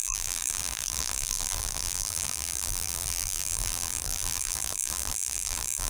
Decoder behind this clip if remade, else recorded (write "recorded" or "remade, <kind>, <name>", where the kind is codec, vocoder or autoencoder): remade, vocoder, BigVGAN v2